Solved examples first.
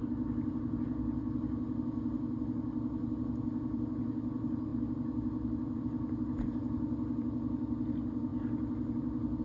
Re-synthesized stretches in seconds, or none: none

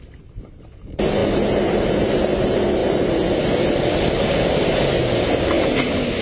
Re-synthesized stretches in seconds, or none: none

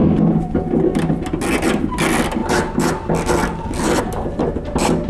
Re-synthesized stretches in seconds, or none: none

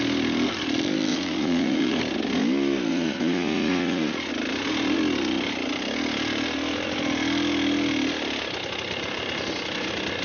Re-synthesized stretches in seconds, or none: 1.1-2.0 (vocoder, Vocos); 2.9-4.3

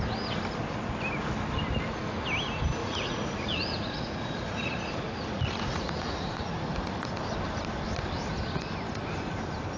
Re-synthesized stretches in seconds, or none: 2.8-6.6 (vocoder, Vocos)